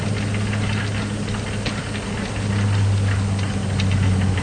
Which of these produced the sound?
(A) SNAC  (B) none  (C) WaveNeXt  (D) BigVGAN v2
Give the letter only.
B